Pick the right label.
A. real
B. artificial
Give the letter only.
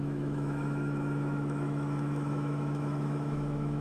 B